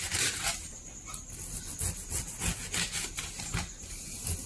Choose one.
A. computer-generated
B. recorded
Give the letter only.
B